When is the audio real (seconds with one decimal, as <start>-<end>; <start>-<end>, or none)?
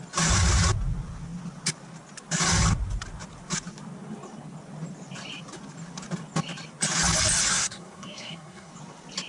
0.0-7.5; 8.7-9.3